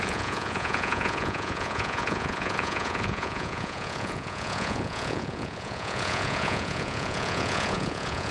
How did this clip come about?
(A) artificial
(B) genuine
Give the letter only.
A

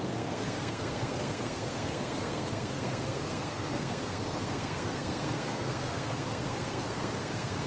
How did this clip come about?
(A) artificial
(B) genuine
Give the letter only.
A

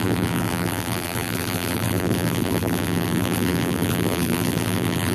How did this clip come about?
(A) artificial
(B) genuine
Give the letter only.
A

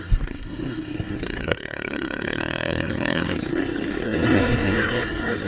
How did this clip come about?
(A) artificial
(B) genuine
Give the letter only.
A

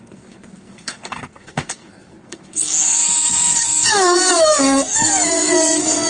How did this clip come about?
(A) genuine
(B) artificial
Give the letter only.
B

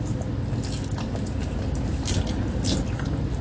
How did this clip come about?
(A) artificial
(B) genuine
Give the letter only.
B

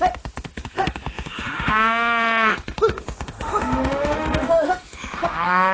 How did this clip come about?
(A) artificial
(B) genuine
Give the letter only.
A